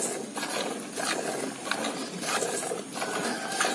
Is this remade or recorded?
recorded